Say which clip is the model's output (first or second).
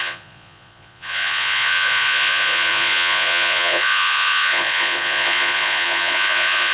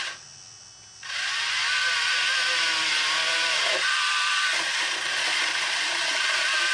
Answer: first